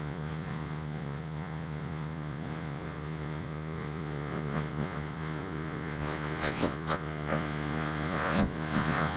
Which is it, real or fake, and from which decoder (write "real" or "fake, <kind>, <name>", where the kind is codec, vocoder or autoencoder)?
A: fake, vocoder, Vocos